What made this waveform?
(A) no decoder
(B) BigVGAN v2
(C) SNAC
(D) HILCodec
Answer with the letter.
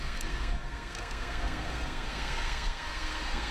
C